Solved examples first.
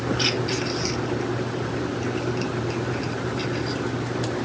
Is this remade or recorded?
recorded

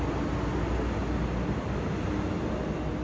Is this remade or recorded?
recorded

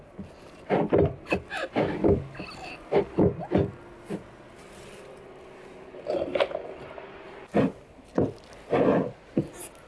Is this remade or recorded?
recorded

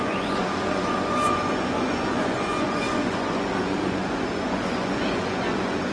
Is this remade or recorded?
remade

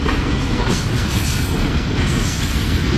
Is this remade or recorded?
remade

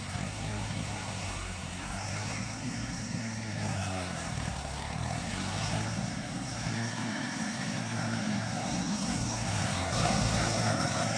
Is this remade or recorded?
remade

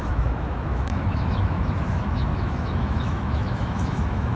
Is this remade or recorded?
remade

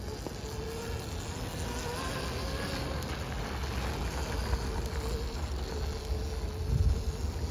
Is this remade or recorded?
recorded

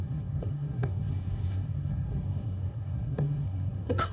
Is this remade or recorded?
remade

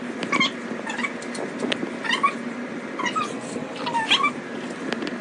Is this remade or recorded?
recorded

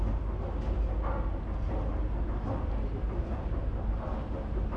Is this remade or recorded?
recorded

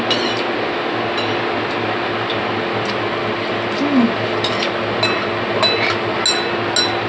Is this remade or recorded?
recorded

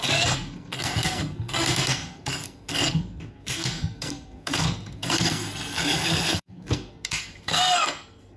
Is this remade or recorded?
remade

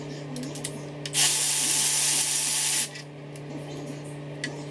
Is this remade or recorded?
recorded